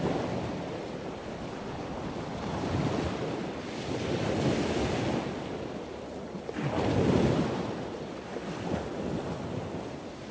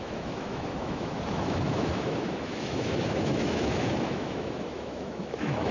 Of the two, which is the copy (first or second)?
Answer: second